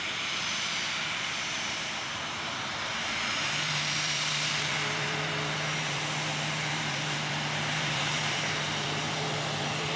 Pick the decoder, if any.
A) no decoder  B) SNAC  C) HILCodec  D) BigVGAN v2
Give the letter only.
D